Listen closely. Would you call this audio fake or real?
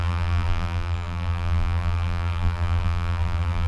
fake